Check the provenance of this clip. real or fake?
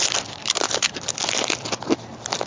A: real